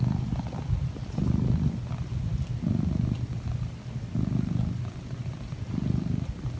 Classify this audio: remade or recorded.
recorded